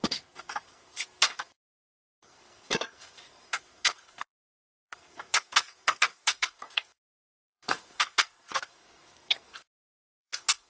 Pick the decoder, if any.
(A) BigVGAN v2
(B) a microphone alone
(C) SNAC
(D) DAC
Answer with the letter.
C